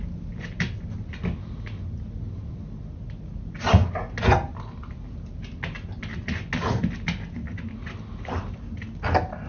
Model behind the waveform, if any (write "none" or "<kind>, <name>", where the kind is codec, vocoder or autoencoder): none